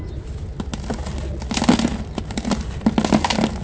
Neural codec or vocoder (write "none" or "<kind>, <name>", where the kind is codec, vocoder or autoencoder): none